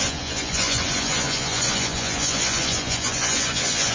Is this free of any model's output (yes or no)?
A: no